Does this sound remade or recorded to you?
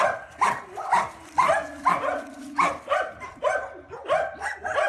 recorded